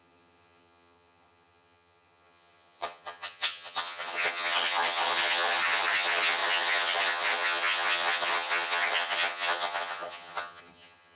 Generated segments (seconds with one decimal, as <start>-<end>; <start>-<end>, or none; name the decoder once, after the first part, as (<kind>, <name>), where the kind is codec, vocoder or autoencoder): 0.0-11.2 (vocoder, HiFi-GAN)